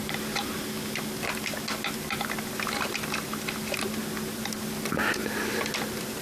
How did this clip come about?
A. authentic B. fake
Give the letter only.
A